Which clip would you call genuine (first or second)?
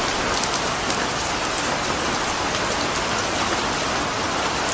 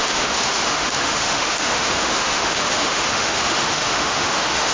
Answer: first